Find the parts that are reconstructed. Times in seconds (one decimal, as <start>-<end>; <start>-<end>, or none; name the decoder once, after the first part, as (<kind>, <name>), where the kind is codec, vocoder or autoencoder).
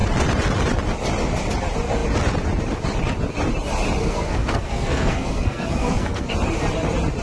4.0-6.3 (codec, SNAC)